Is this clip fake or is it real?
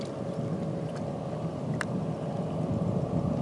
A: real